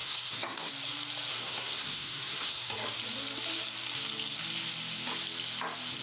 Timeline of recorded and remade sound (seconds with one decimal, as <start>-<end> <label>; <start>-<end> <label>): 0.0-0.7 remade; 0.7-1.3 recorded; 1.3-2.7 remade; 2.7-6.0 recorded